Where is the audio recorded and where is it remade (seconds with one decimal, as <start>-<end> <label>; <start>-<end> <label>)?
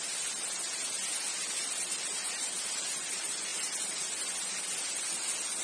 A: 0.0-5.6 recorded